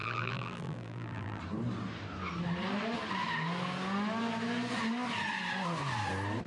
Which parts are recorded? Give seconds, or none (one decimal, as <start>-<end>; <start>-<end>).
1.4-6.5

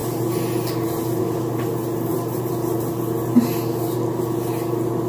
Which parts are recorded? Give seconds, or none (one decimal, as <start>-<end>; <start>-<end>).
0.0-2.1; 2.9-5.1

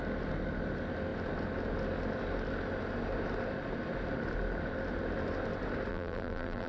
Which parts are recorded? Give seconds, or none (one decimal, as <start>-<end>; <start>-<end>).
0.0-5.9